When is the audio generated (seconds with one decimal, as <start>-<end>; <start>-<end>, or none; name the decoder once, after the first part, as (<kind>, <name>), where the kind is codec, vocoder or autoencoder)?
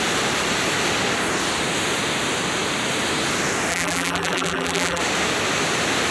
3.7-5.0 (vocoder, BigVGAN v2)